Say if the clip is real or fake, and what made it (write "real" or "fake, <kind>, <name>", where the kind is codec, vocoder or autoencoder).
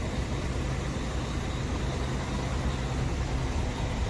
real